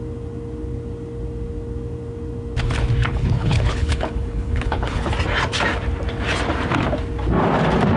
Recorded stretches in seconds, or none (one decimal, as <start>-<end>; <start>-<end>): 0.0-3.1; 5.1-8.0